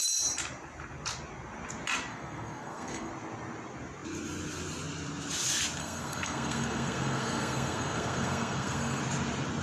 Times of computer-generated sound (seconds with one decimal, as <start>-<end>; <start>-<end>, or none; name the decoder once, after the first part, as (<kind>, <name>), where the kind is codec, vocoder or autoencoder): 2.1-3.1 (codec, SNAC); 5.8-9.0